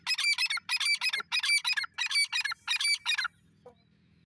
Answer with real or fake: real